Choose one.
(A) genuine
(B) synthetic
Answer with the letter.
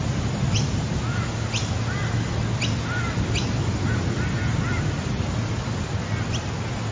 A